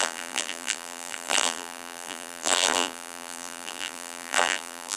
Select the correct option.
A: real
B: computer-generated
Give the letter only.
B